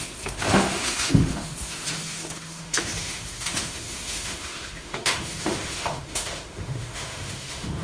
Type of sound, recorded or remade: remade